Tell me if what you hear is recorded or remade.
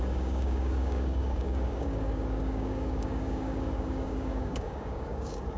remade